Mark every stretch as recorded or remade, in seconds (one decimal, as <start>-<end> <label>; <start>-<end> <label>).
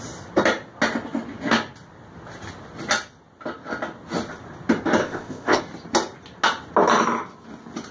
0.0-5.0 recorded; 5.0-5.6 remade; 5.6-7.9 recorded